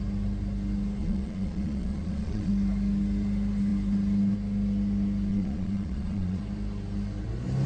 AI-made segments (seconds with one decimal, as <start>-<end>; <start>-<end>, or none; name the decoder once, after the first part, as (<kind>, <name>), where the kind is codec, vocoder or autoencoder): 1.0-2.5 (vocoder, Vocos); 5.3-6.4